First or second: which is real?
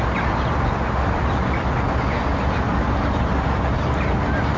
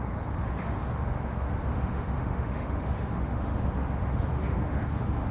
first